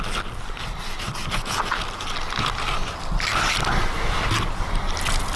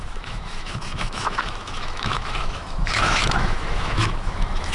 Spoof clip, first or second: second